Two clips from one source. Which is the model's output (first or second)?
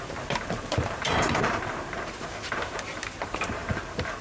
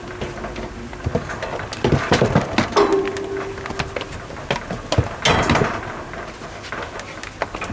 first